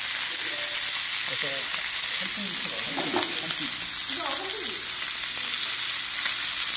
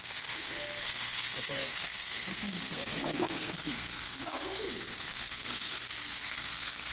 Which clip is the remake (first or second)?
second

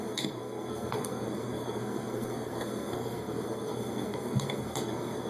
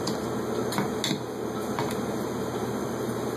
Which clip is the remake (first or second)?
first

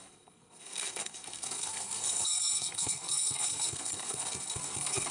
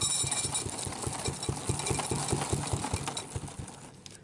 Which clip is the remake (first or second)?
first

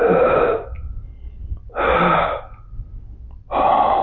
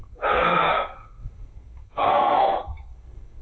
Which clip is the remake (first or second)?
second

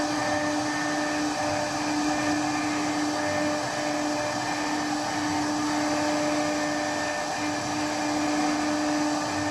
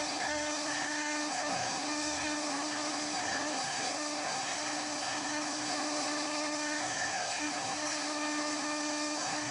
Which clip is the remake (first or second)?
second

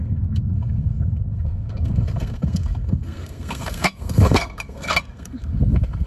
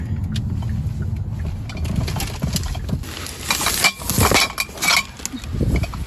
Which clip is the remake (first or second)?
first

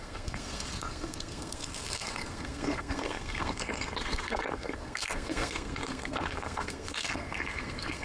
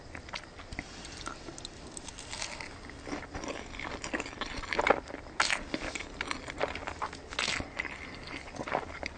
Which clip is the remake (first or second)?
first